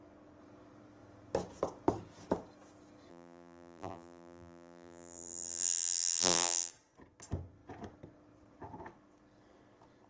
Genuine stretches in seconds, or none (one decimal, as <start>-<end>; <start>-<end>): 0.0-3.1; 6.7-10.1